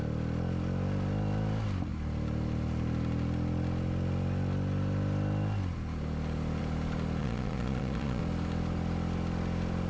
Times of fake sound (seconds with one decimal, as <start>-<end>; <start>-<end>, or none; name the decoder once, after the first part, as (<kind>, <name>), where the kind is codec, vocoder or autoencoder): 7.2-8.2 (vocoder, Vocos)